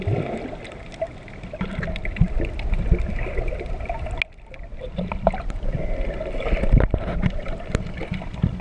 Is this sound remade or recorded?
recorded